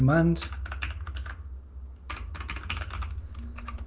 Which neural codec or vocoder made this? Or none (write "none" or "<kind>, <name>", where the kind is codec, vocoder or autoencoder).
none